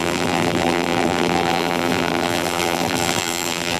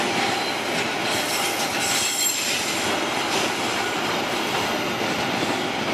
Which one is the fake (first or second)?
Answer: first